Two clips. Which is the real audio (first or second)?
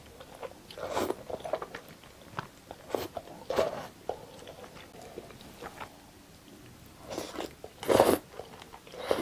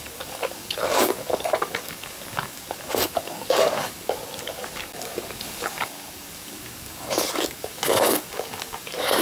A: first